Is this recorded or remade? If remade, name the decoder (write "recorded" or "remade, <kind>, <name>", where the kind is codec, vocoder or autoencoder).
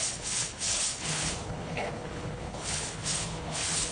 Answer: remade, codec, HILCodec